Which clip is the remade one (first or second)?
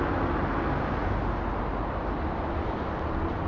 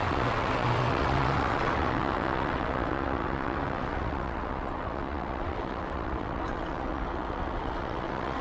second